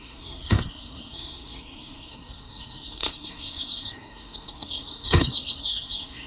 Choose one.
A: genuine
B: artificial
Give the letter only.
B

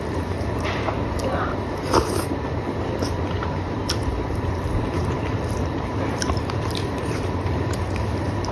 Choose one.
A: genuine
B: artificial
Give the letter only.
B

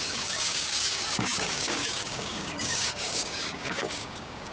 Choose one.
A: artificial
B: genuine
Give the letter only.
A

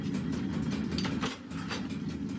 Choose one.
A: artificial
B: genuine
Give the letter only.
B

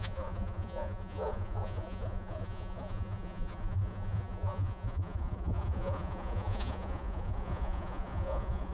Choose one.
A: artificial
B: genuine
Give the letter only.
A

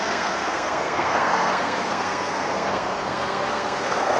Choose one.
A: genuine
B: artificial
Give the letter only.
B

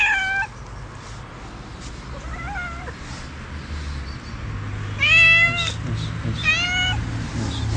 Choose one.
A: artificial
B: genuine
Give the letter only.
B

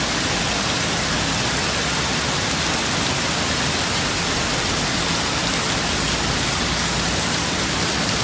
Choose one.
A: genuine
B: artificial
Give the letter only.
A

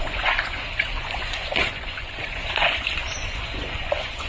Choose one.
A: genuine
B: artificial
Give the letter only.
B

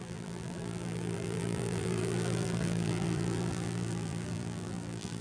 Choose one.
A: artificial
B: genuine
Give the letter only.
A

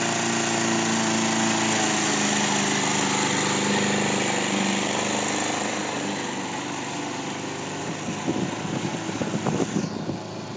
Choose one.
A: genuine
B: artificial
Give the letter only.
A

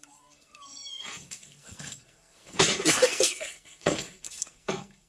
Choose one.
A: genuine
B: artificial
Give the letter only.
B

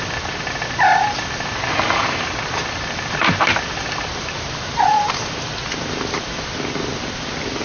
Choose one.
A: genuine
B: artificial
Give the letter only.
B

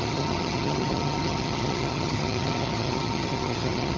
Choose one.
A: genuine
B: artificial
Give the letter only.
B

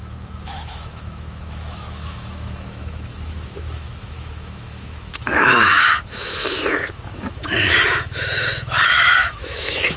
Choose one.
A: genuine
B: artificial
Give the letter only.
B